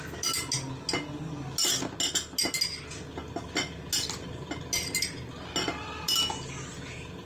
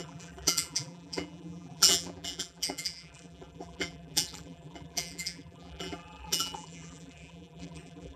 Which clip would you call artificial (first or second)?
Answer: second